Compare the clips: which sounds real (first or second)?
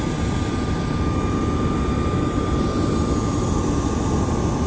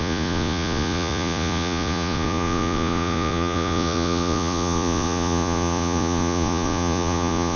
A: first